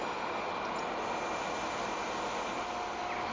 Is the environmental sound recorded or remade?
recorded